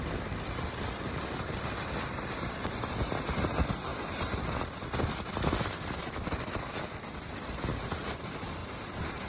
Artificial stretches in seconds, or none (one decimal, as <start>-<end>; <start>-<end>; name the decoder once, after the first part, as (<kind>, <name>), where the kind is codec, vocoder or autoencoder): 3.9-4.6 (vocoder, BigVGAN v2); 8.6-9.3